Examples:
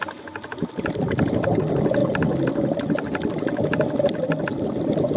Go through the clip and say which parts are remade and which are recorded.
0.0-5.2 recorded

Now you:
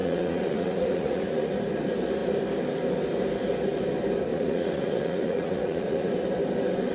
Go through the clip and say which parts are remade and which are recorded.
0.0-1.5 remade; 1.5-4.3 recorded; 4.3-6.1 remade; 6.1-6.9 recorded

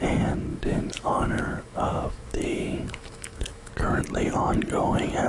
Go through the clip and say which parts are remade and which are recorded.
0.0-0.5 recorded; 0.5-3.7 remade; 3.7-5.3 recorded

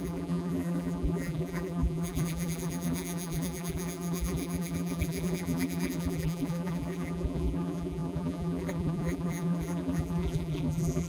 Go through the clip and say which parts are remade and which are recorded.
0.0-11.1 remade

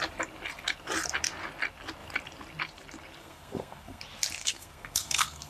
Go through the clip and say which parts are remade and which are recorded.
0.0-3.2 recorded; 3.2-4.0 remade; 4.0-4.4 recorded; 4.4-5.5 remade

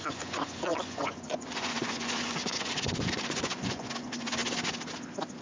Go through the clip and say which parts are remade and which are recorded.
0.0-4.4 remade; 4.4-5.4 recorded

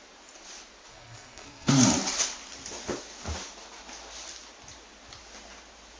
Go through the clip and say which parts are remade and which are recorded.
0.0-0.9 recorded; 0.9-1.7 remade; 1.7-6.0 recorded

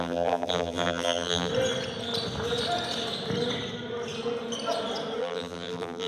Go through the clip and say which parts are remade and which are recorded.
0.0-1.5 remade; 1.5-5.2 recorded; 5.2-6.1 remade